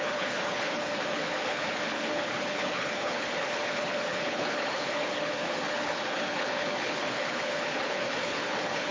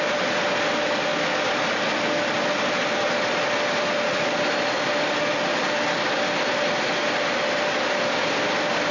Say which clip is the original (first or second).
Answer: second